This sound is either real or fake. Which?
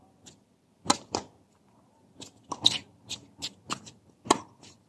real